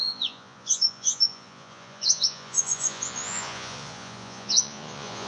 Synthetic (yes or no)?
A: yes